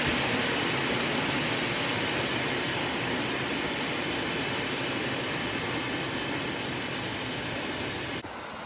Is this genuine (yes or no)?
yes